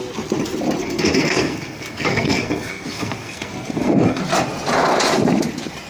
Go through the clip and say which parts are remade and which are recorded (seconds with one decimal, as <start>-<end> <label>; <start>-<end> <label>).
0.0-0.8 recorded; 0.8-4.2 remade; 4.2-5.9 recorded